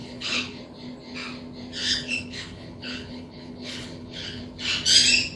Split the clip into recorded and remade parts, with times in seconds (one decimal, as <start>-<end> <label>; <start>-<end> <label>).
0.0-0.6 remade; 0.6-1.8 recorded; 1.8-4.4 remade; 4.4-5.4 recorded